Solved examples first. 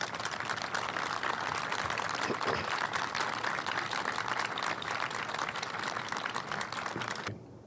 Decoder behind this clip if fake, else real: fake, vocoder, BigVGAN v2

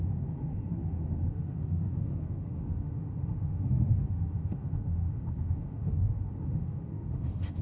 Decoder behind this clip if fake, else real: fake, autoencoder, DAC-VAE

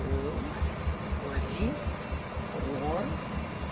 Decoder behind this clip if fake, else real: real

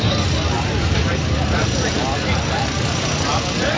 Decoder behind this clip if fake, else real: real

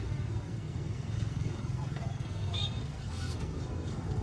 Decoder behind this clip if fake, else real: fake, codec, SNAC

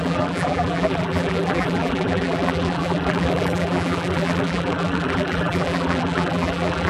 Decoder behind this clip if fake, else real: fake, vocoder, BigVGAN v2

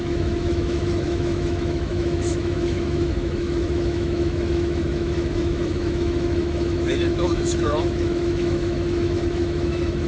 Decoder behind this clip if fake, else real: fake, autoencoder, DAC-VAE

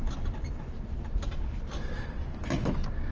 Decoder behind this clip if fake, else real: real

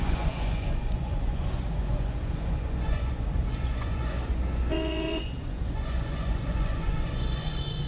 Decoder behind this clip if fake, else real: fake, vocoder, Vocos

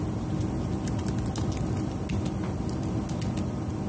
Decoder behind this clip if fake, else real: real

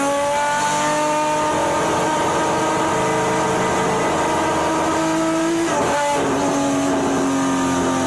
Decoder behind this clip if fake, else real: real